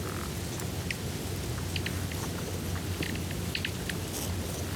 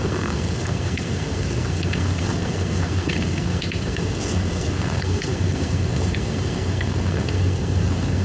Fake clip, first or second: second